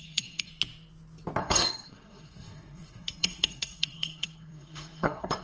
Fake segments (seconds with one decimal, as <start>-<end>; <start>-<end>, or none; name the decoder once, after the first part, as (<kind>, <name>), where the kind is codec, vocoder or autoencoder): 0.0-0.5 (codec, SNAC); 1.4-5.4